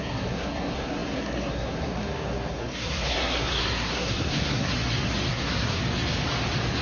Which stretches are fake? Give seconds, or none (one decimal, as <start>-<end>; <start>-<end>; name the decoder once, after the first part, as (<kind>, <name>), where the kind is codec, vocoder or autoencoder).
0.0-4.7 (codec, SNAC); 5.3-5.8